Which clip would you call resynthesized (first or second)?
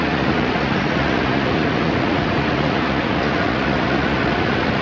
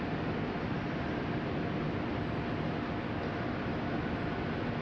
first